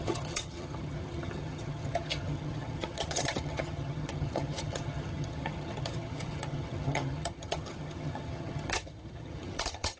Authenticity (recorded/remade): remade